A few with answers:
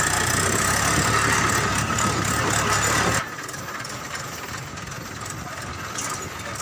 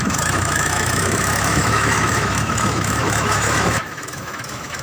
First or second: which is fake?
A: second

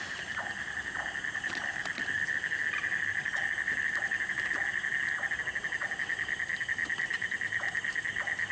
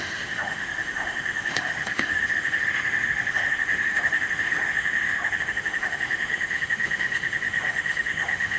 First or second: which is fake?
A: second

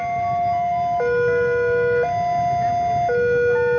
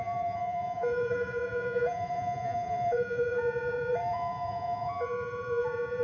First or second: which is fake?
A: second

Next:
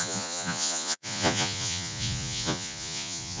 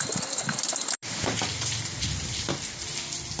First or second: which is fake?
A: first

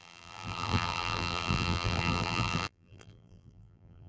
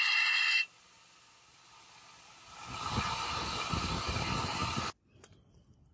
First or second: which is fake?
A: first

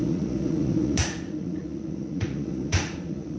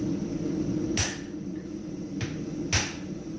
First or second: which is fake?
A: first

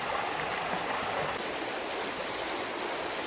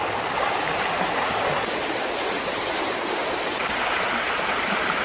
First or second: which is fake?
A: second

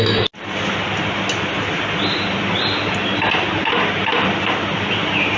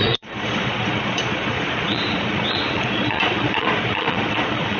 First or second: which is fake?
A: second